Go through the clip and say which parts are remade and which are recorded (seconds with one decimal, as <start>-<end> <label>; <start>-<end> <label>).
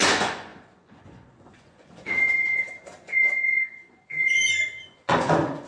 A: 0.0-5.7 remade